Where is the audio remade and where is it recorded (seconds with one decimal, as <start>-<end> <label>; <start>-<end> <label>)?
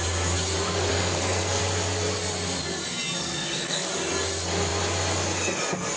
0.0-0.9 recorded; 0.9-1.6 remade; 1.6-3.2 recorded; 3.2-3.9 remade; 3.9-6.0 recorded